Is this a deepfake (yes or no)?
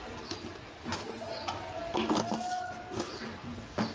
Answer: no